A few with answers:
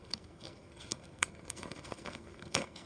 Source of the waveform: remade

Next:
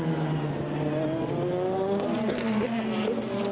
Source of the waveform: recorded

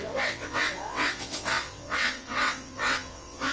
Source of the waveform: remade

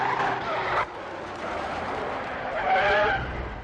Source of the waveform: recorded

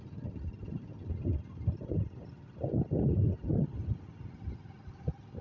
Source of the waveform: recorded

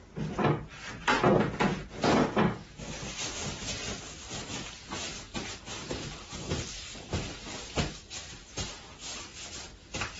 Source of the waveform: recorded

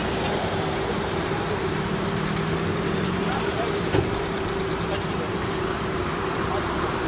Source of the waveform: remade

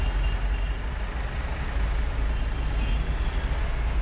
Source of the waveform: recorded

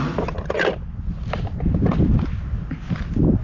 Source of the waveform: recorded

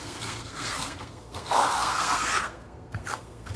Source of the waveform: remade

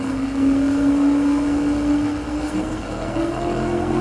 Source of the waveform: remade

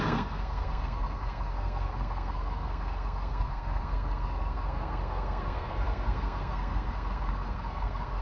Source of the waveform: remade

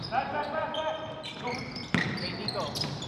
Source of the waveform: recorded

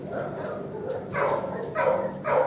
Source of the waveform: recorded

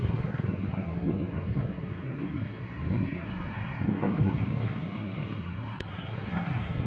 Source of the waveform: remade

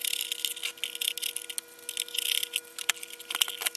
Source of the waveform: recorded